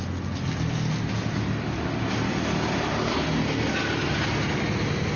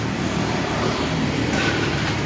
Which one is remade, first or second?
second